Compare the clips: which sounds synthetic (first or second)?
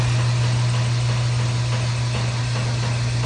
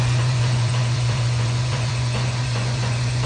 second